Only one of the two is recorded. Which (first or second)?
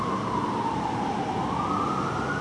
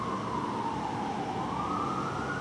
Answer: second